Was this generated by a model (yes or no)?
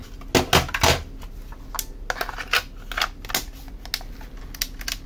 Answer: no